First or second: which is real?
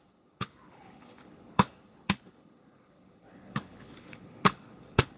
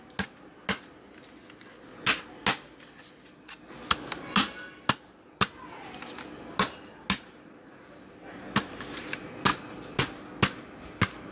second